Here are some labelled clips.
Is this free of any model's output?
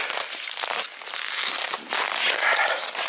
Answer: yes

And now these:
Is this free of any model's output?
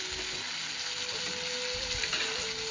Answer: yes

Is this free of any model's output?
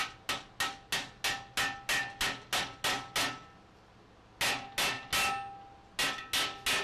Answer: yes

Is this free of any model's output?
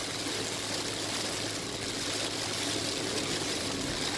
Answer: yes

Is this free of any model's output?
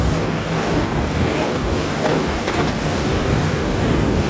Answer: no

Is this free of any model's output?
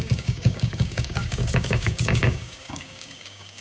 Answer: no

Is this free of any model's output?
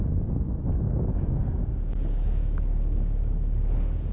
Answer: no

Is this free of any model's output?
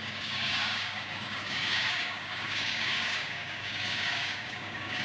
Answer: no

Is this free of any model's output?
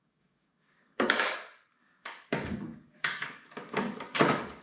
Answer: no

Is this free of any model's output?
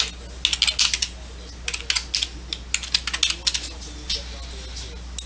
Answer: yes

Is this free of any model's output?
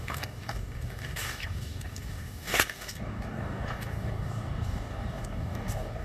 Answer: no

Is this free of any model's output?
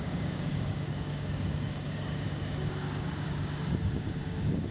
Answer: no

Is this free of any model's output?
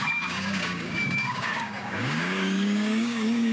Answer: no